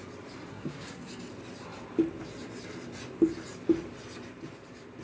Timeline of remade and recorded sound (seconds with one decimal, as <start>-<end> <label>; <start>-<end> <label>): 0.0-0.5 recorded; 0.5-1.1 remade; 1.1-5.0 recorded